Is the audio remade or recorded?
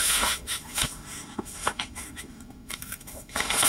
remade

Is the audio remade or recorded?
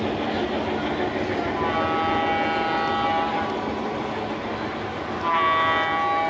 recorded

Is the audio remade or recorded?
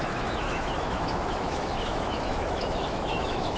remade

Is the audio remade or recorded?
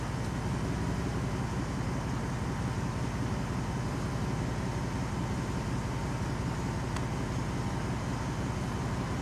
recorded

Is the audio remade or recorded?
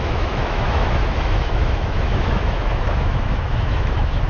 remade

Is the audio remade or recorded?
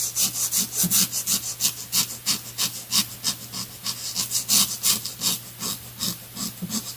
recorded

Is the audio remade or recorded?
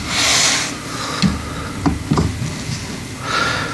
recorded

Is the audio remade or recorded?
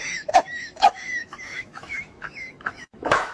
remade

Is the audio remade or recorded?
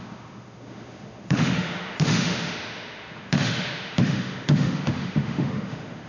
remade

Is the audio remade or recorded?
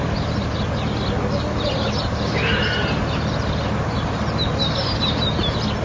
recorded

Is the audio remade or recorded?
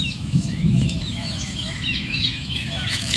remade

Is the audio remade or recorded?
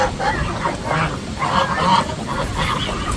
recorded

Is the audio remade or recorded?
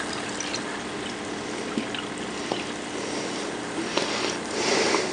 recorded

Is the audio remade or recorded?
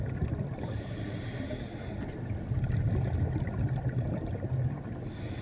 recorded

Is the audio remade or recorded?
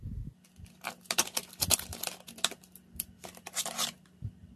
recorded